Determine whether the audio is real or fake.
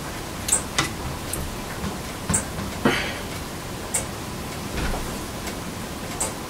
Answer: real